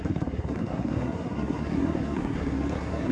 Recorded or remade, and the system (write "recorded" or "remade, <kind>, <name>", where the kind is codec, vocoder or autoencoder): remade, codec, SNAC